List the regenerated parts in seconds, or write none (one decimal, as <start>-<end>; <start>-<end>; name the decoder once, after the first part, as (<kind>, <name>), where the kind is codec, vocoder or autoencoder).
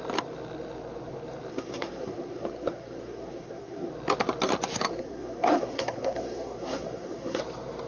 1.5-3.9 (codec, SNAC); 4.9-7.4